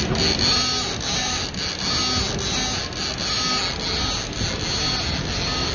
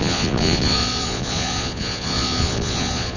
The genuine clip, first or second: first